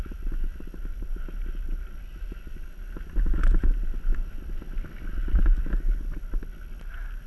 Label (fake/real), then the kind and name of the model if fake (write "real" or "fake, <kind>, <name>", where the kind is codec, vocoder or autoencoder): real